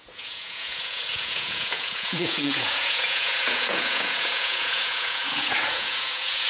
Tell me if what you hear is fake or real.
fake